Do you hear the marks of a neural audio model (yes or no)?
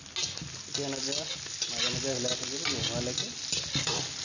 no